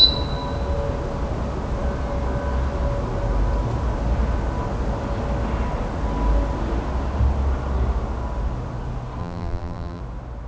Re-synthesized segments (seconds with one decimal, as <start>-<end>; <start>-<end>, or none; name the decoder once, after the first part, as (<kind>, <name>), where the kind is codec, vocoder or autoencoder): 9.2-10.0 (vocoder, BigVGAN v2)